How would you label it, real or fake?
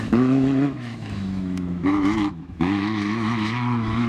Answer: fake